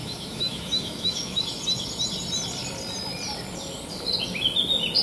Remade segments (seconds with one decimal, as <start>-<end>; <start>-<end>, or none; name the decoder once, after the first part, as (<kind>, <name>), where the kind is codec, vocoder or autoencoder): 0.0-1.4 (autoencoder, DAC-VAE)